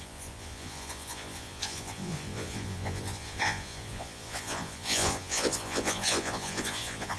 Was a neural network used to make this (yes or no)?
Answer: yes